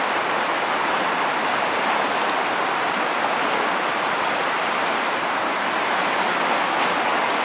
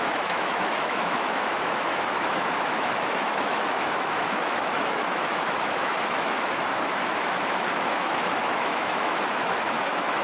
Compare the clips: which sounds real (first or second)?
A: first